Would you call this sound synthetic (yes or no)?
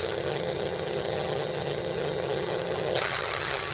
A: yes